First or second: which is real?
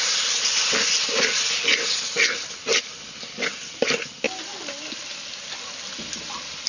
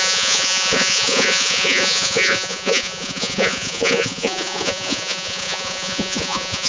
first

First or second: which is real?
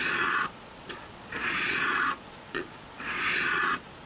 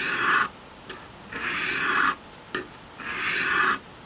second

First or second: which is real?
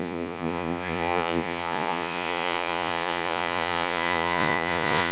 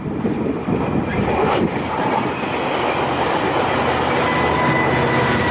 second